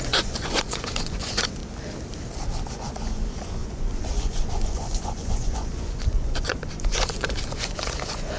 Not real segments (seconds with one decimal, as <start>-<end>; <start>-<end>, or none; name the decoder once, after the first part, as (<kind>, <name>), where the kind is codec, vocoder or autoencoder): 0.0-1.6 (vocoder, Vocos); 2.7-8.4